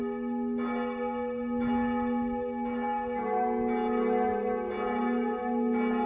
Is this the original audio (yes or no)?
yes